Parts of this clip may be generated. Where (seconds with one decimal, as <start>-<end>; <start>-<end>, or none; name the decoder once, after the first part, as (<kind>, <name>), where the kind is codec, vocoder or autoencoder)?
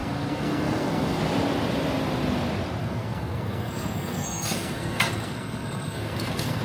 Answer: 0.0-1.2 (codec, SNAC); 2.8-6.6